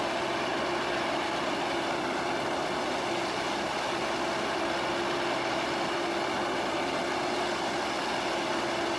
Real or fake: real